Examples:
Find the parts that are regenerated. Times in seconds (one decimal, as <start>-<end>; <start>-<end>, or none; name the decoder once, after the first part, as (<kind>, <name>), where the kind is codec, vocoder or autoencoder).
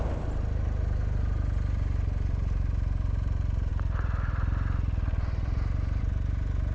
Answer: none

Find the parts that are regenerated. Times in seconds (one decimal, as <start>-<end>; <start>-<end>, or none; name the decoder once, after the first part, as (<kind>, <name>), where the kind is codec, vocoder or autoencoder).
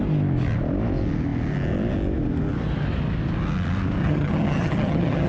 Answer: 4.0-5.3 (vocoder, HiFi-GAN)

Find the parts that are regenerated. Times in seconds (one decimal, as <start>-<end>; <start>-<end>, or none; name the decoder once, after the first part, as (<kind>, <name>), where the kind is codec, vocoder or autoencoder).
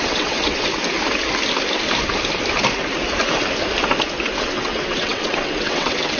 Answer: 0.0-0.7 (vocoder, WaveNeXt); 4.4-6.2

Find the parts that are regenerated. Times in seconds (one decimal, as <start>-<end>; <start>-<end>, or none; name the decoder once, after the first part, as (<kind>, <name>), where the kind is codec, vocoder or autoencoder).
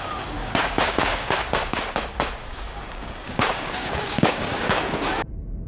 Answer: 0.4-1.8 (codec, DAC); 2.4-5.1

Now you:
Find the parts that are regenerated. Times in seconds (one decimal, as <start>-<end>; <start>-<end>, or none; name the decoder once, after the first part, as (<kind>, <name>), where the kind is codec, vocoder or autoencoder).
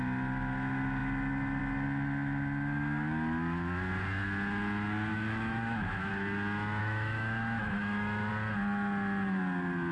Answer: 5.1-6.1 (autoencoder, DAC-VAE); 6.8-8.3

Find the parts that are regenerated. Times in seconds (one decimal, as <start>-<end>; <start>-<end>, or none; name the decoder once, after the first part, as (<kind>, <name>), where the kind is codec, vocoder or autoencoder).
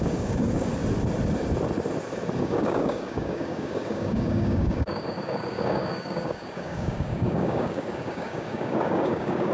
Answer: 0.0-0.7 (codec, DAC); 2.4-9.5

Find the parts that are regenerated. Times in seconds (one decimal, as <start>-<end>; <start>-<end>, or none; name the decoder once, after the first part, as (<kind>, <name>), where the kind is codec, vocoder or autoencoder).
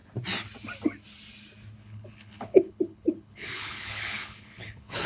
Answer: 1.8-5.1 (codec, HILCodec)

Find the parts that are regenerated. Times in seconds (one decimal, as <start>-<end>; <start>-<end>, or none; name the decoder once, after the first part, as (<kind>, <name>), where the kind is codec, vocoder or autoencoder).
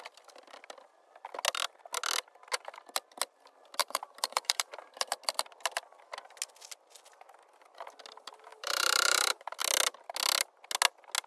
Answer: 3.8-5.2 (vocoder, BigVGAN v2); 8.5-9.6